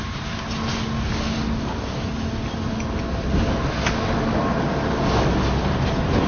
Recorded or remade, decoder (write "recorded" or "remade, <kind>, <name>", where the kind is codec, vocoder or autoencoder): recorded